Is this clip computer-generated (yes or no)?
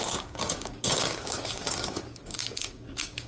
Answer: yes